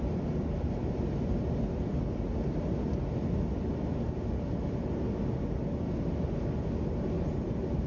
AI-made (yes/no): no